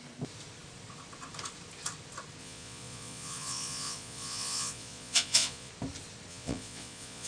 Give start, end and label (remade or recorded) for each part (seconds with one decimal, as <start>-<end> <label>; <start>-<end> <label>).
0.0-2.4 recorded; 2.4-5.7 remade; 5.7-6.3 recorded; 6.3-7.3 remade